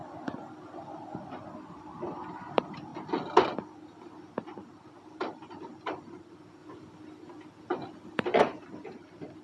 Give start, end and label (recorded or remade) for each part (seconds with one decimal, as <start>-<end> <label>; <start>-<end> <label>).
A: 0.0-2.4 recorded; 2.4-2.9 remade; 2.9-4.9 recorded; 4.9-6.6 remade; 6.6-8.4 recorded; 8.4-9.4 remade